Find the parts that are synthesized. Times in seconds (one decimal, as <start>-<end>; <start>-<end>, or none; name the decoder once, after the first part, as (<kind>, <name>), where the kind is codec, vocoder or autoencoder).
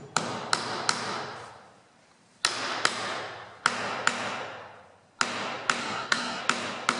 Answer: 5.8-6.4 (codec, SNAC)